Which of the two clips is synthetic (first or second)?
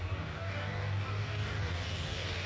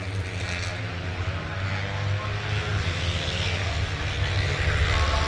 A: first